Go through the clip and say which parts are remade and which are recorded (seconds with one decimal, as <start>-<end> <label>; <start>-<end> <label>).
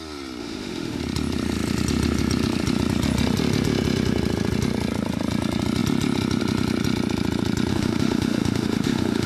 0.0-0.4 recorded; 0.4-1.0 remade; 1.0-7.7 recorded; 7.7-9.3 remade